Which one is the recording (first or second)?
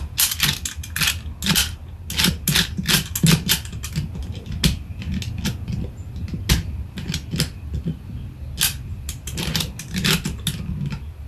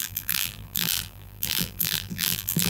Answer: first